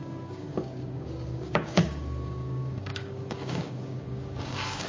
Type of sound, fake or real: fake